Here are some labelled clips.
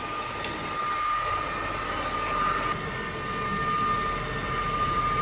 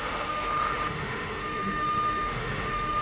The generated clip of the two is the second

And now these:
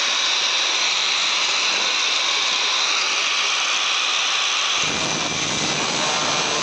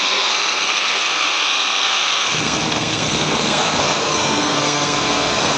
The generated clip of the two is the second